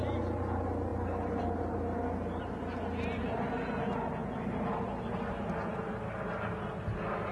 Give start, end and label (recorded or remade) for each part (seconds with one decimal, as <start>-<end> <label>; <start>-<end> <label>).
0.0-7.3 recorded